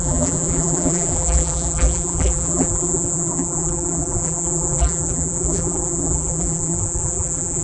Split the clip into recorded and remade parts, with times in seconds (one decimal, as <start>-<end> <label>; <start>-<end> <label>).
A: 0.0-7.6 remade